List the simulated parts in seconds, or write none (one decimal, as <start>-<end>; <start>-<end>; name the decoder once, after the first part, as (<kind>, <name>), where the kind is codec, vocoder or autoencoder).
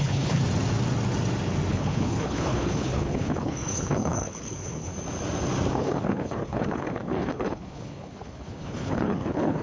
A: 0.0-0.4 (codec, HILCodec); 1.7-4.9; 5.7-9.6